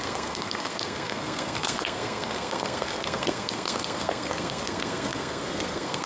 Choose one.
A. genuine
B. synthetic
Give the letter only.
B